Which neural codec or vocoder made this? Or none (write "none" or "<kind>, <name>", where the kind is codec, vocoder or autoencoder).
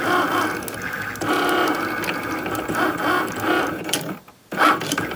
none